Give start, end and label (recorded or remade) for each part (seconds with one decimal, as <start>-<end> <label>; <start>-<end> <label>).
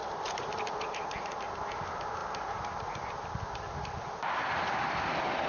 0.0-5.5 recorded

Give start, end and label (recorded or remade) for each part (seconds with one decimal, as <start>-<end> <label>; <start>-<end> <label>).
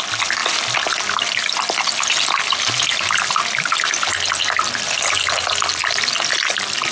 0.0-6.9 recorded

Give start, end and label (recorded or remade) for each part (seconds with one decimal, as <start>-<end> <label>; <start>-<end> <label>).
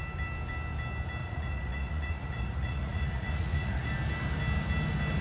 0.0-1.2 recorded; 1.2-3.9 remade; 3.9-5.2 recorded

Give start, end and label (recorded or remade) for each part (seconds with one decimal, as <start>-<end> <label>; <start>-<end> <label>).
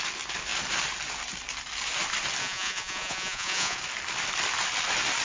0.0-2.4 recorded; 2.4-3.8 remade; 3.8-5.2 recorded